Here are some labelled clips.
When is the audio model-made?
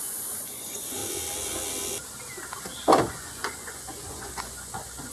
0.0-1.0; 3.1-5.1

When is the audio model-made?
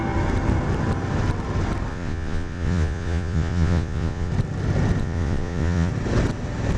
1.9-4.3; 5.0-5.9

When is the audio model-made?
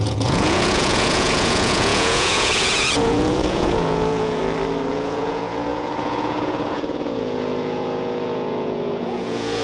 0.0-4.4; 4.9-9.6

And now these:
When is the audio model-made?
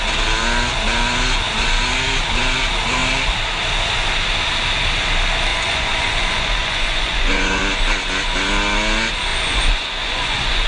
5.5-7.6; 9.3-10.7